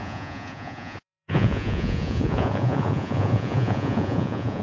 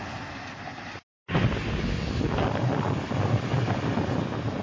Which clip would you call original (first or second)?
second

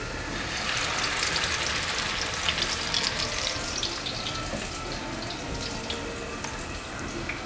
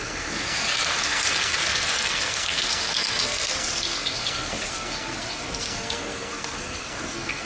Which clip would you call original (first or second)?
first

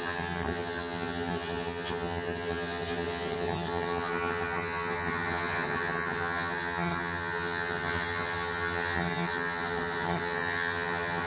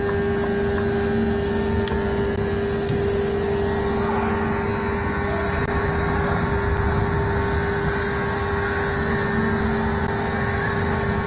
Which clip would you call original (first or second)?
second